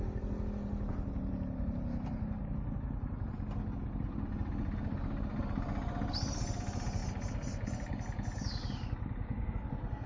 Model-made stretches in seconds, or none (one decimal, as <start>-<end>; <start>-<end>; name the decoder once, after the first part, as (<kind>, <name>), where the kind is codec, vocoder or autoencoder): none